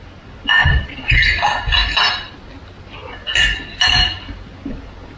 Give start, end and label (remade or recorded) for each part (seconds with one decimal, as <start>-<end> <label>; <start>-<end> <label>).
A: 0.0-0.6 recorded; 0.6-1.1 remade; 1.1-5.2 recorded